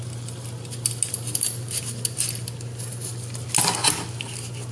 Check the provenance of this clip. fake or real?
real